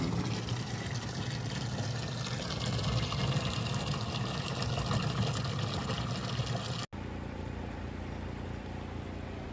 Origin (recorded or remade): recorded